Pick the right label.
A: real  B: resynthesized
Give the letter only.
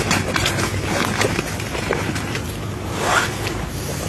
A